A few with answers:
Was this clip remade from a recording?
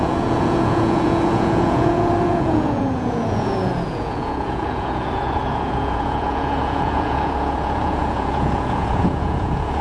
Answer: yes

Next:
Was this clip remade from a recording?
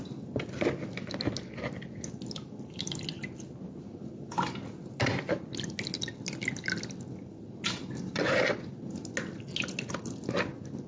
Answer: no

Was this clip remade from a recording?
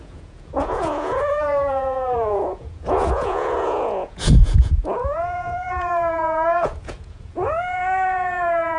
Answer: yes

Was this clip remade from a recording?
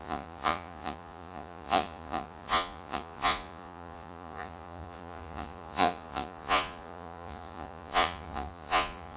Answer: yes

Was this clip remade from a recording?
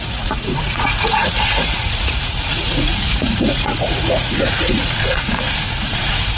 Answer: yes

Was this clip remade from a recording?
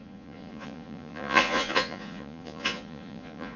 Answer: yes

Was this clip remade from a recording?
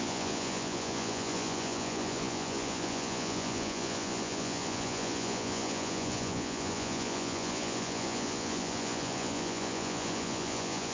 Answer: yes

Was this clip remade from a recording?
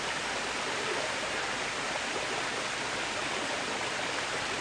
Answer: no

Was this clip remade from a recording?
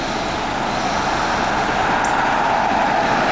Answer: no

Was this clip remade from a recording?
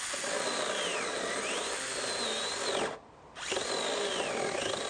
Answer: no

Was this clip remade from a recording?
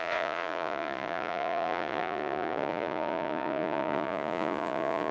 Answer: yes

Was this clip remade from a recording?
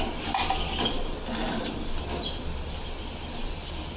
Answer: no